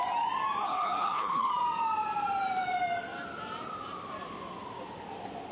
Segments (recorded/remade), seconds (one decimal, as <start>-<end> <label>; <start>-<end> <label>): 0.0-0.6 recorded; 0.6-1.5 remade; 1.5-5.5 recorded